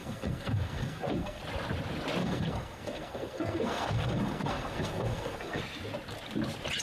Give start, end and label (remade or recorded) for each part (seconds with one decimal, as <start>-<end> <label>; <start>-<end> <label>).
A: 0.0-1.4 remade; 1.4-2.2 recorded; 2.2-5.6 remade; 5.6-6.8 recorded